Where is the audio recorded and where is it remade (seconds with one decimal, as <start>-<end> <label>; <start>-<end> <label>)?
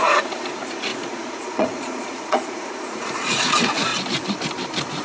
0.0-3.9 remade; 3.9-5.0 recorded